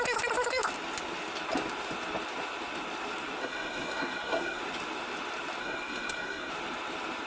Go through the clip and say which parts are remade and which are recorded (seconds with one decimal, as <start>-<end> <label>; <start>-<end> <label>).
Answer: 0.0-3.4 recorded; 3.4-4.6 remade; 4.6-5.6 recorded; 5.6-6.5 remade; 6.5-7.3 recorded